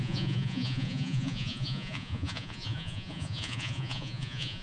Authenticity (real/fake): fake